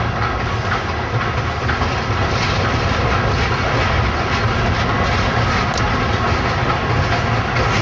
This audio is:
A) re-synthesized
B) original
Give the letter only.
B